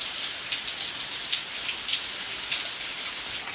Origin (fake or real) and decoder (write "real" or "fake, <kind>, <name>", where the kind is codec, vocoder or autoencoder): real